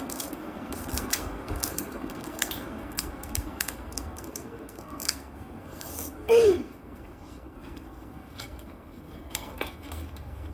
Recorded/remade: remade